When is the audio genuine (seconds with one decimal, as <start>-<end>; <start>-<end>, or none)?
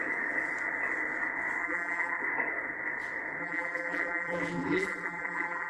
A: 0.0-1.6; 2.2-3.4